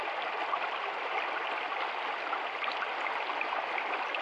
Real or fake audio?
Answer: real